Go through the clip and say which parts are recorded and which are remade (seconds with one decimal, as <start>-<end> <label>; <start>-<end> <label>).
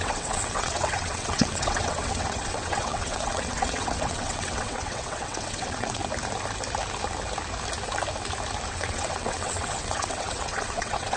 0.0-6.0 remade; 6.0-8.7 recorded; 8.7-11.2 remade